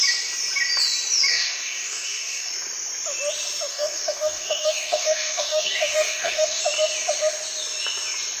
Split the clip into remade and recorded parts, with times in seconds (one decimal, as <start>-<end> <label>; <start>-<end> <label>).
0.0-1.3 recorded; 1.3-2.5 remade; 2.5-3.7 recorded; 3.7-6.6 remade; 6.6-8.4 recorded